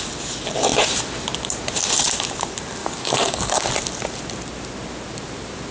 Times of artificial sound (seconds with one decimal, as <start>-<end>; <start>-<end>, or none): 2.8-3.7